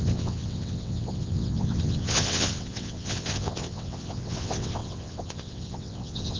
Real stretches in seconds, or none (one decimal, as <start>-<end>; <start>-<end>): none